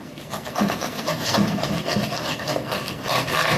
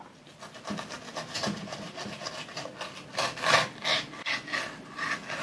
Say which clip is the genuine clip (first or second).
second